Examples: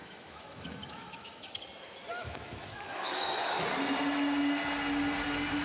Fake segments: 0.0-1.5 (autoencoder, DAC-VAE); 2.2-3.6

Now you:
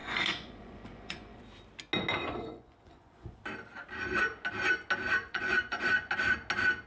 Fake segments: 0.0-1.4 (vocoder, Vocos); 2.3-3.4; 5.2-6.1

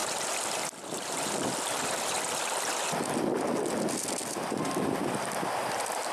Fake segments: none

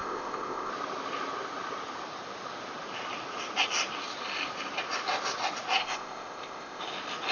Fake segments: 0.0-0.7 (codec, ZipCodec); 5.8-6.8

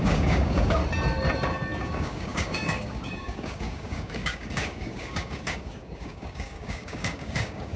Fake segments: 0.0-0.8 (codec, DAC); 1.8-7.8